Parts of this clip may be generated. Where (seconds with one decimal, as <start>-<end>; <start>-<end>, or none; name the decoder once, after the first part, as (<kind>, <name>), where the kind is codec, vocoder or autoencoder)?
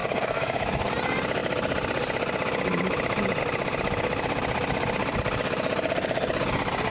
0.0-0.9 (codec, DAC)